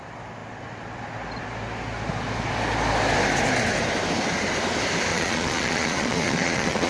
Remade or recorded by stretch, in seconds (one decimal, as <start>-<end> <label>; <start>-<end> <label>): 0.0-5.1 recorded; 5.1-6.9 remade